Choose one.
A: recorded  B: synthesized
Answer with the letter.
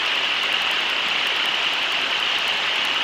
B